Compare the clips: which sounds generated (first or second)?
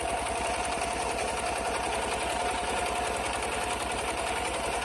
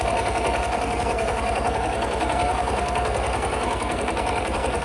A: second